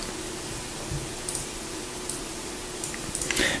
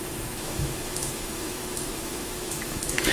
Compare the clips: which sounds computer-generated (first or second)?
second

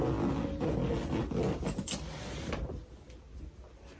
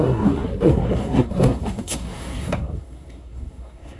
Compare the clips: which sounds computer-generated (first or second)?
second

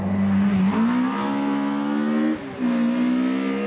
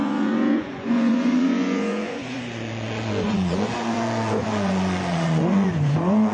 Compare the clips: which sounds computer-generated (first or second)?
second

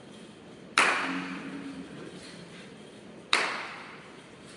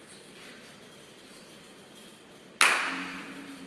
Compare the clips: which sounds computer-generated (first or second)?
first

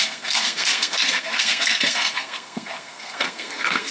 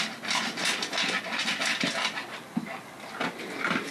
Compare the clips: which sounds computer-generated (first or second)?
first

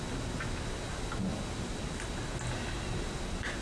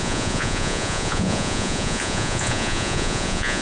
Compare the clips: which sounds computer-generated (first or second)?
second